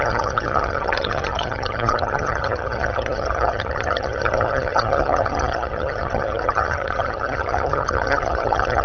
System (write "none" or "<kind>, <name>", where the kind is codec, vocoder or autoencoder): vocoder, HiFi-GAN